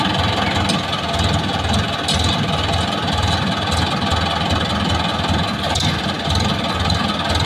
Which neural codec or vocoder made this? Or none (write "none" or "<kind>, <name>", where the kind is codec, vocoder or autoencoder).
none